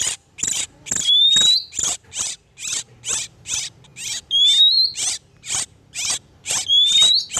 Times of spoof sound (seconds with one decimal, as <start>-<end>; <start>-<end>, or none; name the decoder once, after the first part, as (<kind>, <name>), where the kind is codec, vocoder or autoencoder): none